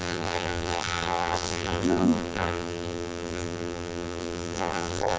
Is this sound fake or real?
fake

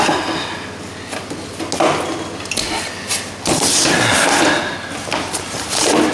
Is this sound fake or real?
real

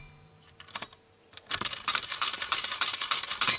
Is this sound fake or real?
fake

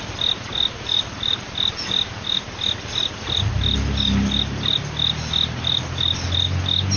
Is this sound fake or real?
fake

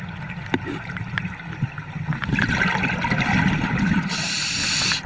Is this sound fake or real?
real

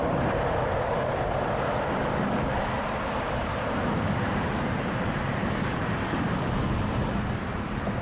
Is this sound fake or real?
fake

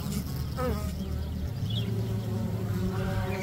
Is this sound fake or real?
real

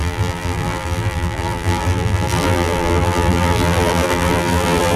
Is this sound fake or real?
fake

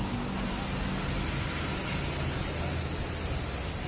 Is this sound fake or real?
real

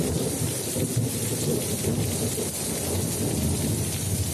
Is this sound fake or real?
real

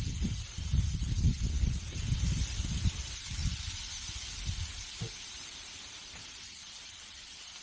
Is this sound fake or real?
fake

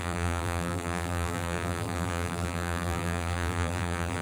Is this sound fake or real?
fake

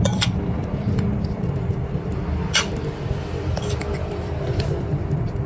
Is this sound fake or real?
fake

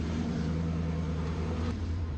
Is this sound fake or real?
fake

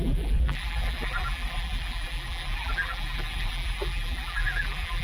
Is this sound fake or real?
fake